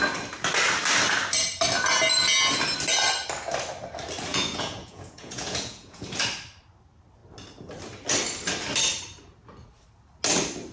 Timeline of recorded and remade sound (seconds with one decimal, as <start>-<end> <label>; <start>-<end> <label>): 0.0-4.3 recorded; 4.3-6.2 remade; 6.2-10.7 recorded